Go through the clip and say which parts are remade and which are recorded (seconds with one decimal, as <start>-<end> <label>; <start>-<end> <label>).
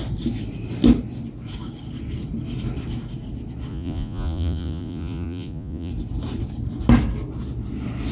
0.0-3.7 recorded; 3.7-5.9 remade; 5.9-8.1 recorded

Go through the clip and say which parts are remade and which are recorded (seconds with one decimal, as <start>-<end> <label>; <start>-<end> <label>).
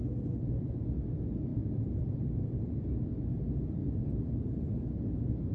0.0-5.5 recorded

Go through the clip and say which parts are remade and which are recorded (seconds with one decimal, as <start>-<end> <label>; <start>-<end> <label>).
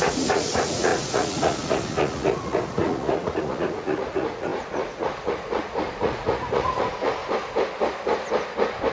0.0-7.2 remade; 7.2-8.9 recorded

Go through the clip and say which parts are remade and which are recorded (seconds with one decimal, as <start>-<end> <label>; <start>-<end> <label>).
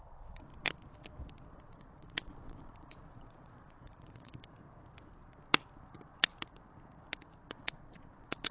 0.0-0.5 remade; 0.5-1.6 recorded; 1.6-4.3 remade; 4.3-7.5 recorded; 7.5-8.5 remade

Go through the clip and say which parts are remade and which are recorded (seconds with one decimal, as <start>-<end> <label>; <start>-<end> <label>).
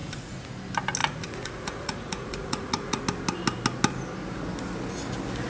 0.0-0.5 remade; 0.5-1.0 recorded; 1.0-3.0 remade; 3.0-5.5 recorded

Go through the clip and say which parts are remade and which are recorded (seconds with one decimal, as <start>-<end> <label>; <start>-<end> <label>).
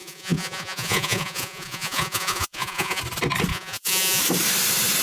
0.0-3.0 remade; 3.0-3.5 recorded; 3.5-4.2 remade; 4.2-5.0 recorded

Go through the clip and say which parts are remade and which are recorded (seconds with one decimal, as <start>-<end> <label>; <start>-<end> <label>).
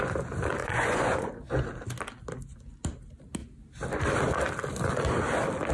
0.0-0.6 recorded; 0.6-1.3 remade; 1.3-5.7 recorded